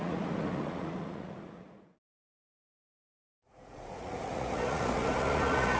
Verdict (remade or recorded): remade